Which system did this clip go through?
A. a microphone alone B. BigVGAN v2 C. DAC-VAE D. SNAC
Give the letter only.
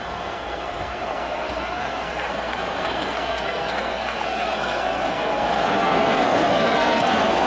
D